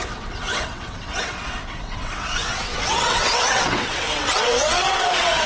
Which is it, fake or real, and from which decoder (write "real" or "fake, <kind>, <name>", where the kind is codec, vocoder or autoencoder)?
fake, vocoder, WaveNeXt